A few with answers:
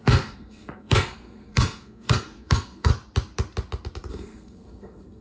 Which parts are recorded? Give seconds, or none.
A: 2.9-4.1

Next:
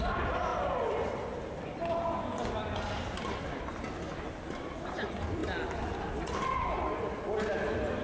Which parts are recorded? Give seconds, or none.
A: 0.0-8.0

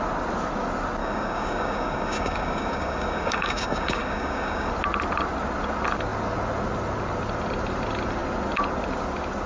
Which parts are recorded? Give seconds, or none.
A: 0.0-1.0; 4.7-9.5

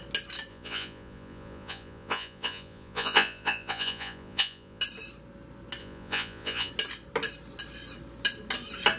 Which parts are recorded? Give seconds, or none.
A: 0.0-0.5; 4.8-5.8; 6.7-9.0

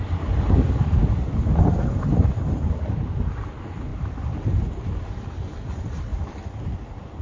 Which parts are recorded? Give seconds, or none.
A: 0.0-7.2